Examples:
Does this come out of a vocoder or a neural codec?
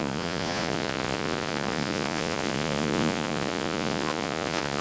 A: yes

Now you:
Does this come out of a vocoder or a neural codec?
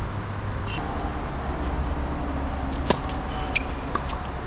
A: no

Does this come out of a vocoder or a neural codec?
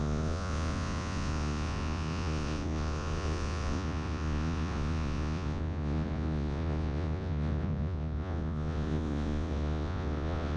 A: yes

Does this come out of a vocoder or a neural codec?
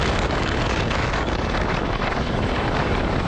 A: yes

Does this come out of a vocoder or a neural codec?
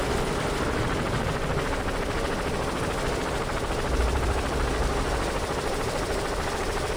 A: no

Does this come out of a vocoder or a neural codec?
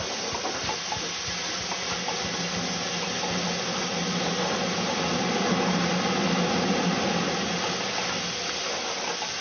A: no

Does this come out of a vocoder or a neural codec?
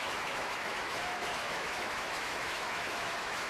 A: yes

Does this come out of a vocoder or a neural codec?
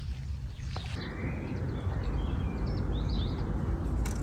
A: no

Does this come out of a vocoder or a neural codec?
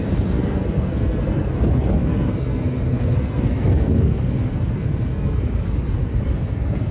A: yes